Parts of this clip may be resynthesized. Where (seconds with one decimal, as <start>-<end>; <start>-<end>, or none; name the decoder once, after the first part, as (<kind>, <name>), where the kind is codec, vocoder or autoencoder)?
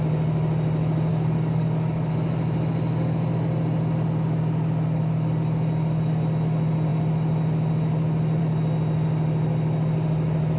1.1-2.1 (codec, DAC)